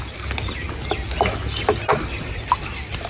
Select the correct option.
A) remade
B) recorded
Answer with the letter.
B